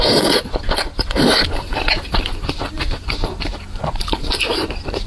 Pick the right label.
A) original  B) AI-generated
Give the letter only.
A